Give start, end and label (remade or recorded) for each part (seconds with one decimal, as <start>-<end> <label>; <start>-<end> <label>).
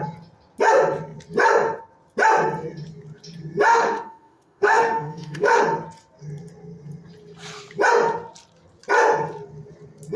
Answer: 0.0-3.7 recorded; 3.7-5.6 remade; 5.6-10.2 recorded